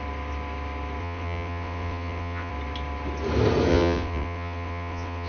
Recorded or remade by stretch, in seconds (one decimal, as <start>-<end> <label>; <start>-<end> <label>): 0.0-1.0 recorded; 1.0-2.5 remade; 2.5-3.7 recorded; 3.7-5.3 remade